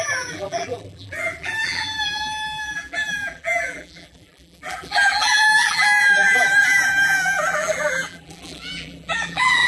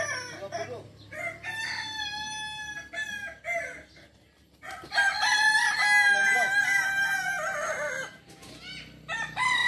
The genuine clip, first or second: second